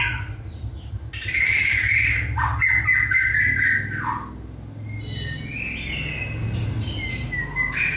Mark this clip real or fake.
real